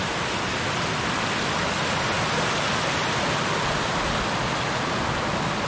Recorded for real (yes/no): yes